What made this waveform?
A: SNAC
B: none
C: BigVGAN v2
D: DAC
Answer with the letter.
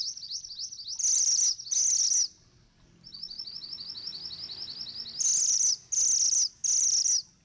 B